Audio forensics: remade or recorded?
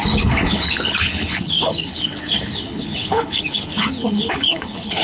remade